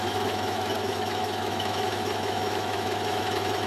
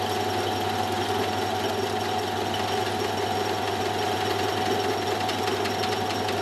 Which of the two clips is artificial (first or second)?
first